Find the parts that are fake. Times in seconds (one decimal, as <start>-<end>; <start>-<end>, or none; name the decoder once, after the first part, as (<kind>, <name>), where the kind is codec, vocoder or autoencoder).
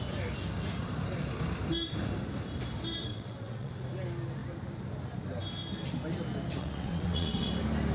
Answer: 3.1-3.7 (vocoder, WaveNeXt); 6.6-7.5